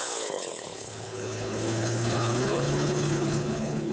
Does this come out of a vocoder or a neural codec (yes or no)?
yes